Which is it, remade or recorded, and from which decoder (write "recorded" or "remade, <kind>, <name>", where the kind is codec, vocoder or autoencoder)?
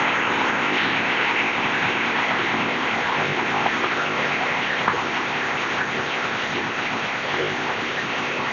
remade, codec, ZipCodec